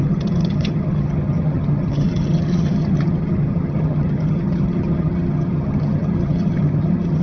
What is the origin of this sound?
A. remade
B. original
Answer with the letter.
A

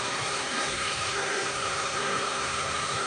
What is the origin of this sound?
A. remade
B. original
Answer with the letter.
A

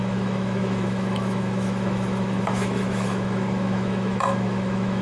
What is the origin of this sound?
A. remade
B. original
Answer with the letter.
A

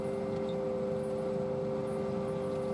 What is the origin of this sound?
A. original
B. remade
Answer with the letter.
A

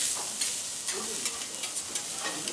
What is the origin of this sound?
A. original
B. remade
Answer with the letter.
A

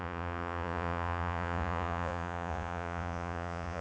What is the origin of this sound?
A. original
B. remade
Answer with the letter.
B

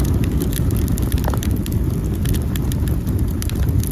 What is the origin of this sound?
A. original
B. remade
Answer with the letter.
A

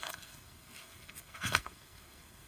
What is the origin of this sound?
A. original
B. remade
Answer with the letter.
B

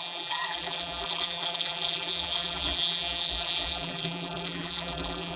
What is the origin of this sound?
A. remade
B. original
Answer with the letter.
A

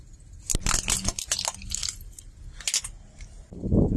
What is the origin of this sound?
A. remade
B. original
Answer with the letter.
B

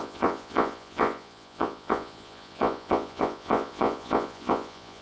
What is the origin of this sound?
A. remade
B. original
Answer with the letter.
A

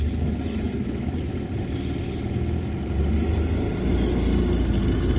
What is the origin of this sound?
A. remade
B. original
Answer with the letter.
B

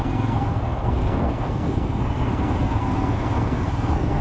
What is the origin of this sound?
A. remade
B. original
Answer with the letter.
A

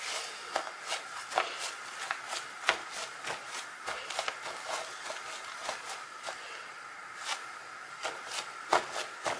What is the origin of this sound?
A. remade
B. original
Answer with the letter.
B